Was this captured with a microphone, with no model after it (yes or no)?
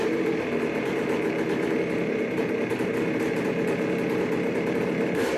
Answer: no